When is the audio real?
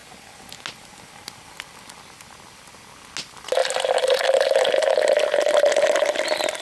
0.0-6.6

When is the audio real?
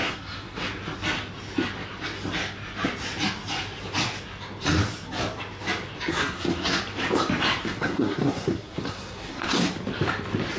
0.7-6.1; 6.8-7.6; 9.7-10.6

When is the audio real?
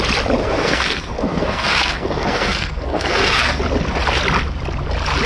0.0-0.4; 3.6-5.3